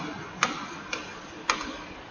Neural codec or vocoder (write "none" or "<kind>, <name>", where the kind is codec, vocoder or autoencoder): none